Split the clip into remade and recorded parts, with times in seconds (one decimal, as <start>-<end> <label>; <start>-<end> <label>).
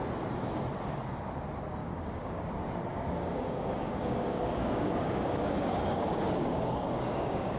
0.0-1.8 recorded; 1.8-2.5 remade; 2.5-2.9 recorded; 2.9-7.6 remade